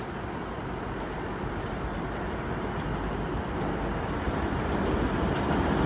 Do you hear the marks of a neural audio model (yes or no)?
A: no